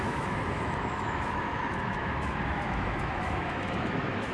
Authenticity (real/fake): fake